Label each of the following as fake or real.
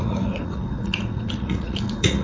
fake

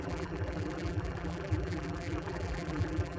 fake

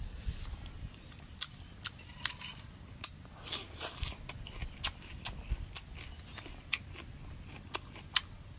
real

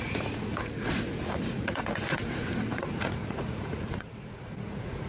fake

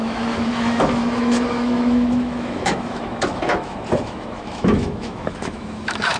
fake